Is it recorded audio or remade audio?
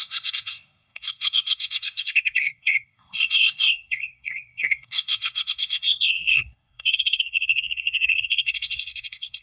remade